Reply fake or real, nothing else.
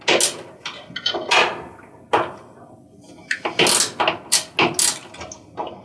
real